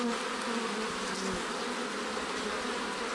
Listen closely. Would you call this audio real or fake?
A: real